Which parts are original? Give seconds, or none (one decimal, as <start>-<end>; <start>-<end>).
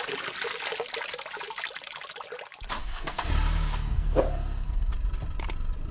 0.0-2.8; 3.3-3.8; 4.9-5.9